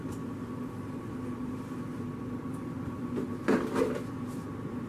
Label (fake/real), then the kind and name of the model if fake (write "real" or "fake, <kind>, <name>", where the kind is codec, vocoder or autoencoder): real